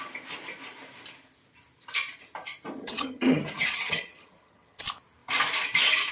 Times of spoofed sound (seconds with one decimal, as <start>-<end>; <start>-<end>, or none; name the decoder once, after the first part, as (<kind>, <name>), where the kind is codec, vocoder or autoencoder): 2.8-4.8 (vocoder, HiFi-GAN)